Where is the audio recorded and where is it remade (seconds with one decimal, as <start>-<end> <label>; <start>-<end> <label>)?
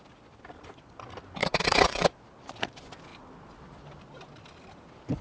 0.0-1.4 recorded; 1.4-2.1 remade; 2.1-5.2 recorded